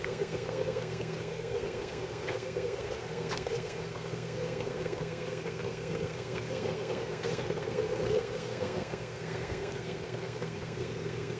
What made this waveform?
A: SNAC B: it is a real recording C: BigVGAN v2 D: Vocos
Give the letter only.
A